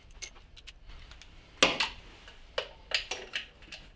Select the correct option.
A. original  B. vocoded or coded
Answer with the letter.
A